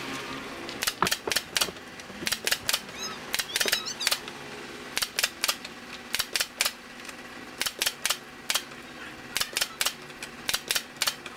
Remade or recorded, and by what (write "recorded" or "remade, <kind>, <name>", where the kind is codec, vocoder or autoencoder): recorded